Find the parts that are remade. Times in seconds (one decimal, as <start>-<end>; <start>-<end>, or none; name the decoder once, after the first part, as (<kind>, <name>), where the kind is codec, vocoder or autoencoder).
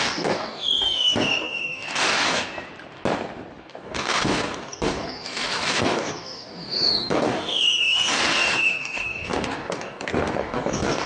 0.0-2.5 (codec, DAC); 3.6-11.1